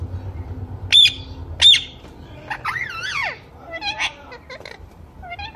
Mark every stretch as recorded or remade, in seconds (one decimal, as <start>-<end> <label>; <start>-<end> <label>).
0.0-5.6 recorded